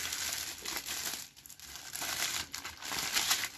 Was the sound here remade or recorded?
recorded